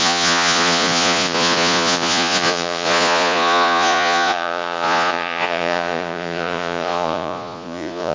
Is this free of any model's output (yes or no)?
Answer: no